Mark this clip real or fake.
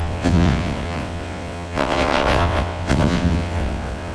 fake